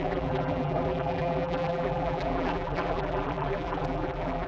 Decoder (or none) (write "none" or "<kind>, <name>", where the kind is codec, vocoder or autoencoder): vocoder, BigVGAN v2